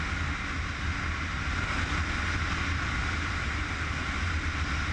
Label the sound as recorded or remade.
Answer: recorded